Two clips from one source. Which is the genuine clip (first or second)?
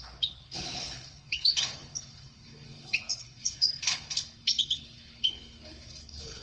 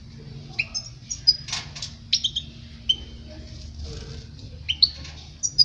second